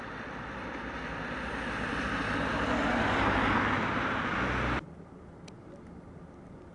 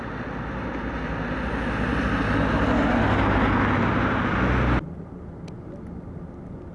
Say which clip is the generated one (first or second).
first